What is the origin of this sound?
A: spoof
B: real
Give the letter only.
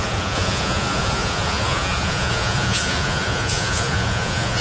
A